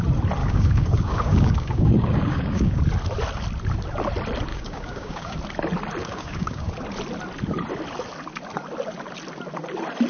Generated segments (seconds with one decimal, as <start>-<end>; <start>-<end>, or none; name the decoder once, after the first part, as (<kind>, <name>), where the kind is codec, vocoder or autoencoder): 0.4-2.8 (codec, DAC); 4.5-5.4; 6.0-6.7

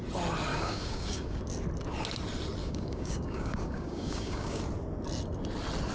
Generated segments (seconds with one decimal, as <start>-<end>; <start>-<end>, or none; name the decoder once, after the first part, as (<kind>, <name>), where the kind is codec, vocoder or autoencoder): 0.5-1.4 (codec, DAC); 2.6-4.6

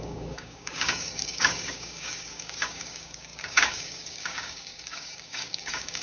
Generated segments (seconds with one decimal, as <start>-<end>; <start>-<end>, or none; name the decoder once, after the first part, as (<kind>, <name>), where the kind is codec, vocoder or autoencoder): 0.0-6.0 (codec, DAC)

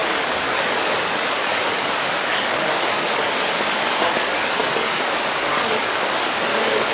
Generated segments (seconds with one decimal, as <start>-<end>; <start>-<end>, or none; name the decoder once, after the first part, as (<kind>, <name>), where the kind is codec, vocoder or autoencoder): 0.0-6.9 (codec, DAC)